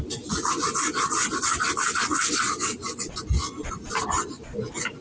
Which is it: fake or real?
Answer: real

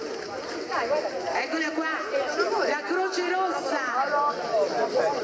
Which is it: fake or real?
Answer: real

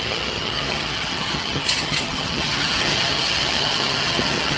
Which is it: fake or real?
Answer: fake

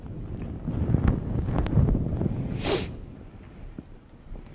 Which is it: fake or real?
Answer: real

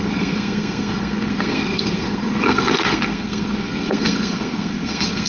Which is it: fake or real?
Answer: fake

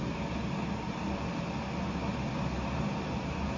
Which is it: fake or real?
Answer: real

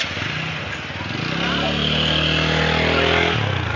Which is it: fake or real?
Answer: real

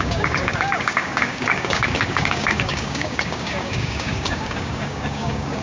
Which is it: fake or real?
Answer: fake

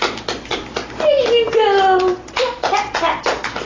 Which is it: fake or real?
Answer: real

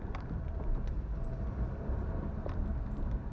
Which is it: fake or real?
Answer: fake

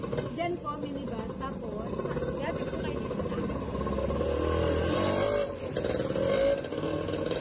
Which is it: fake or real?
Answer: real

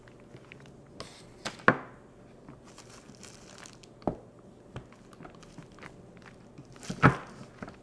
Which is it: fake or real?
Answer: real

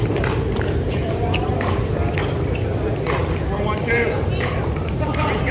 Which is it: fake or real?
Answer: real